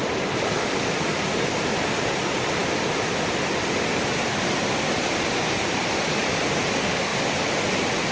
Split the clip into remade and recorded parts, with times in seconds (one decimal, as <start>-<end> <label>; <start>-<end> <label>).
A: 0.0-8.1 recorded